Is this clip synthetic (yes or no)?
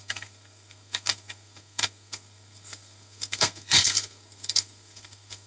yes